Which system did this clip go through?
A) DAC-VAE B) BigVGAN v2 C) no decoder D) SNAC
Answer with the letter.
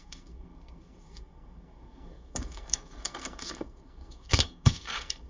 D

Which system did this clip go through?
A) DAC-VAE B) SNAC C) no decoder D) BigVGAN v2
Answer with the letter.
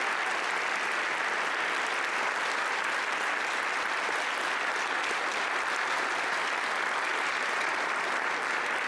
C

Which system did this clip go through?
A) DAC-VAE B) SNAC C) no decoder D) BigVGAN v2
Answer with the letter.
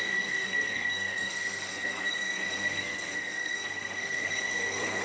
B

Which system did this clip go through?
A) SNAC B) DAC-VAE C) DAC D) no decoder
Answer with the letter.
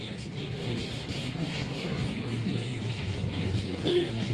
A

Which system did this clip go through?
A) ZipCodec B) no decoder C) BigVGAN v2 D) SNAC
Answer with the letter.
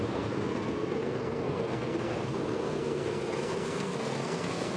D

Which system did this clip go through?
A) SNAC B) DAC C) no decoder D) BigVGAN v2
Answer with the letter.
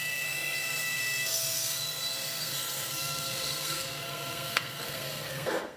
A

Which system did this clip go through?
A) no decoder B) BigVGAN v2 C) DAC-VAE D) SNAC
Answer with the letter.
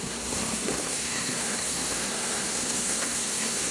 D